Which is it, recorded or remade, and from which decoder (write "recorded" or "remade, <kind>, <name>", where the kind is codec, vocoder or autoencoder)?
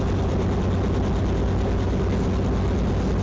recorded